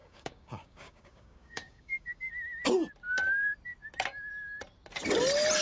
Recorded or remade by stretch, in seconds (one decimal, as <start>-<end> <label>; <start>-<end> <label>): 0.0-2.3 remade; 2.3-5.6 recorded